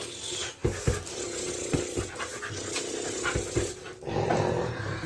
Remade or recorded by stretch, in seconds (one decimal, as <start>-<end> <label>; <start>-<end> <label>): 0.0-5.1 recorded